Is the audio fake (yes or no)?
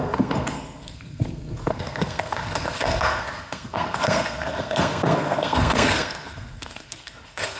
yes